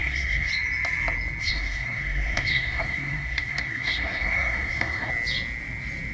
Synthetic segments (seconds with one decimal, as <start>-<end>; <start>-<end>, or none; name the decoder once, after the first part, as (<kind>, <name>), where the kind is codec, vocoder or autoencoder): 0.0-0.5 (codec, SNAC); 1.4-5.1